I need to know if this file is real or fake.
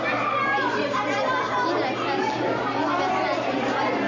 real